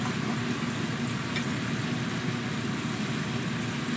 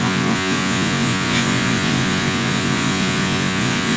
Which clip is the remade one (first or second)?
second